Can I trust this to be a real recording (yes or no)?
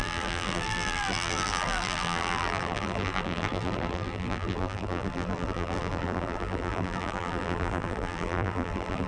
no